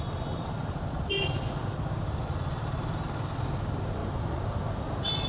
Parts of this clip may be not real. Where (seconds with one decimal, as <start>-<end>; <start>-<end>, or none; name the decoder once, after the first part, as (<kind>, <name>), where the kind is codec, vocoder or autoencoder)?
4.0-4.6 (vocoder, BigVGAN v2)